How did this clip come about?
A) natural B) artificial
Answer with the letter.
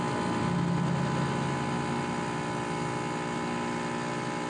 A